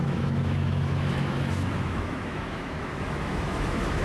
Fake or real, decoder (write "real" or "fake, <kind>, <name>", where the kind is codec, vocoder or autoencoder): fake, autoencoder, DAC-VAE